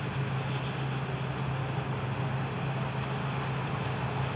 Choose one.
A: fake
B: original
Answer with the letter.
B